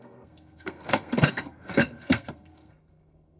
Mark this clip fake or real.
fake